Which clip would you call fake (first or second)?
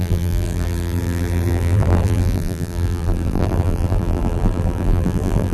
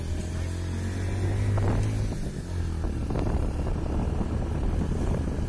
first